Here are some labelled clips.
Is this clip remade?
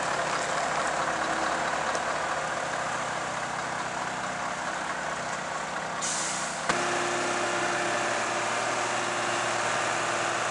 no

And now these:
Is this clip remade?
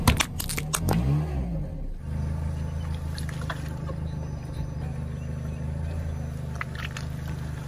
no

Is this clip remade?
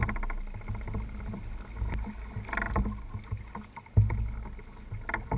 no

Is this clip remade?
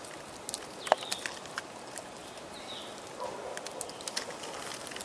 no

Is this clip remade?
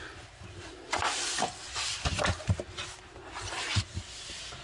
no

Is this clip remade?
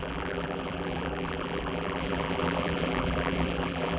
yes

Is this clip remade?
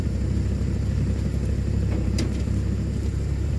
yes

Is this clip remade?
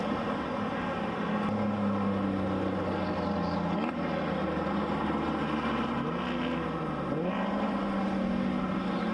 no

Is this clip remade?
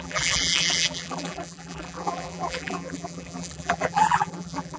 yes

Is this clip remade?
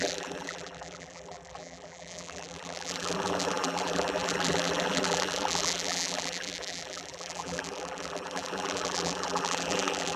yes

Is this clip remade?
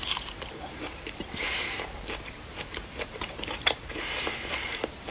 yes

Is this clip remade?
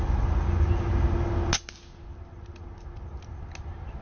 no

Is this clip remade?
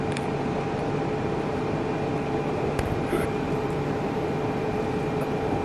yes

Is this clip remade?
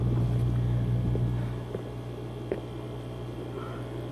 no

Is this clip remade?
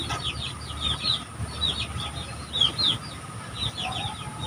no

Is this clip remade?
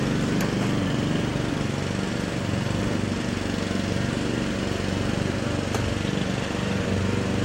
no